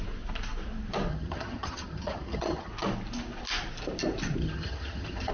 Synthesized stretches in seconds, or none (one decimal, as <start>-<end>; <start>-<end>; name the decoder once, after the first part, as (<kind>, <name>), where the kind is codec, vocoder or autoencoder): 1.1-2.7 (vocoder, HiFi-GAN); 4.4-5.3